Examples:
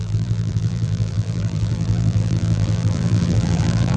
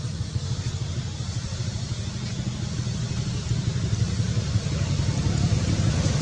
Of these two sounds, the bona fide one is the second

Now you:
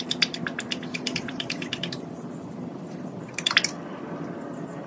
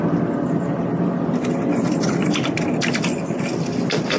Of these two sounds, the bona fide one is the second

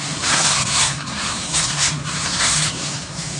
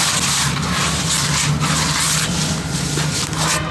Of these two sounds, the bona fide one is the second